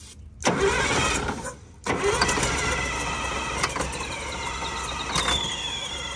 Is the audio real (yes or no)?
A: yes